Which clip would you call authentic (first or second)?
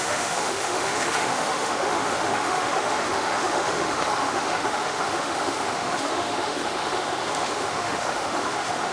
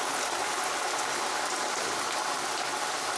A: second